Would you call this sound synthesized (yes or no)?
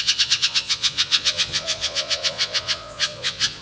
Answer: yes